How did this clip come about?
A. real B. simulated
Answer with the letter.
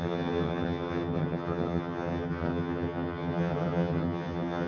B